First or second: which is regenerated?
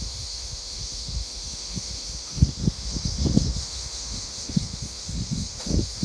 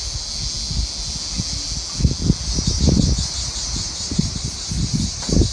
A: first